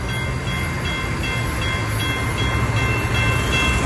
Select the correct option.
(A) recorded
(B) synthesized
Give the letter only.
A